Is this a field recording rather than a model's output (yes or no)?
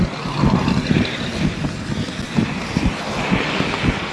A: yes